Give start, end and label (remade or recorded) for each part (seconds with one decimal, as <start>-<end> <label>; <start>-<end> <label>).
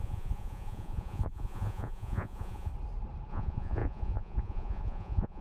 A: 0.0-2.7 remade; 2.7-3.3 recorded; 3.3-5.4 remade